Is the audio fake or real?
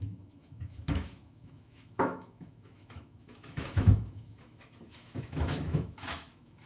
fake